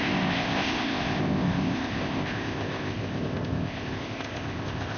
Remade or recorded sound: remade